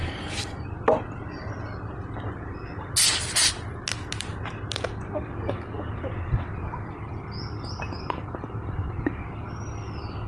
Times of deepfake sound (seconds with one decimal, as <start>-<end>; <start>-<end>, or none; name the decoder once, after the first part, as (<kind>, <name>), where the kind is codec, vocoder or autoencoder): 0.0-0.7 (vocoder, BigVGAN v2)